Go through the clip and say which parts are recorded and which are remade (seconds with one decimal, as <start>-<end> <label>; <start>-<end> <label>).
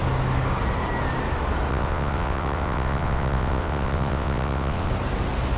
0.0-1.7 recorded; 1.7-4.9 remade; 4.9-5.6 recorded